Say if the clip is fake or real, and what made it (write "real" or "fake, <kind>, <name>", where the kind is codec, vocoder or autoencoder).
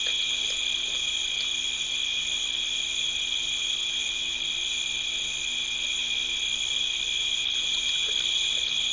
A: real